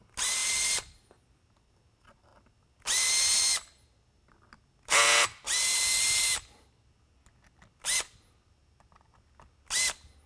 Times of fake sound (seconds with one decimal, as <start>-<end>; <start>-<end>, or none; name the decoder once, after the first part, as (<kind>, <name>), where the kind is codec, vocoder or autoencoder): none

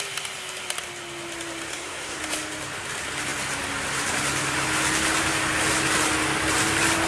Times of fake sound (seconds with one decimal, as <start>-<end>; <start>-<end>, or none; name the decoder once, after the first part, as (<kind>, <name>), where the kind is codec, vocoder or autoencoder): 1.7-2.2 (codec, SNAC)